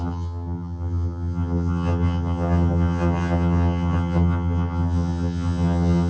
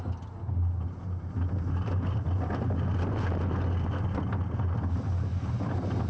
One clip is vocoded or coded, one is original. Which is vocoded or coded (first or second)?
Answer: first